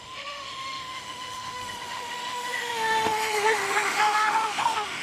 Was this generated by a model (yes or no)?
yes